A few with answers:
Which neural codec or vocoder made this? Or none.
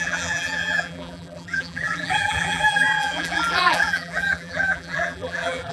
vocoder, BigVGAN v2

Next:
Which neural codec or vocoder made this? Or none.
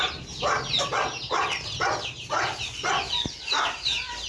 none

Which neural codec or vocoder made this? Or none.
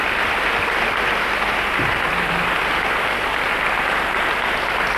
none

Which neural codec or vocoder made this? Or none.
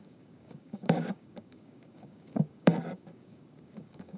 codec, DAC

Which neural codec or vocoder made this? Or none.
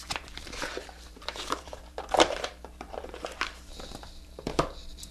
vocoder, BigVGAN v2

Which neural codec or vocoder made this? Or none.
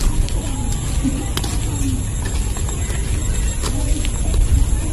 none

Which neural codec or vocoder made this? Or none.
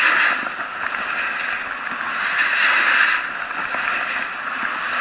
none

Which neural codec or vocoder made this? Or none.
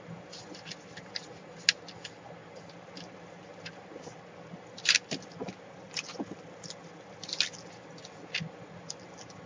none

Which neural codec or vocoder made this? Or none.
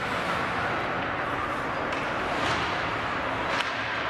none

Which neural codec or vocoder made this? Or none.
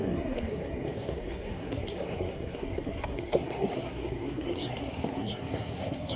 codec, SNAC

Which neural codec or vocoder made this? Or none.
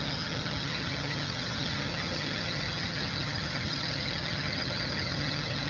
vocoder, HiFi-GAN